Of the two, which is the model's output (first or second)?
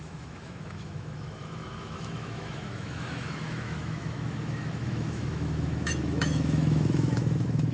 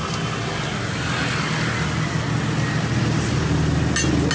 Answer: first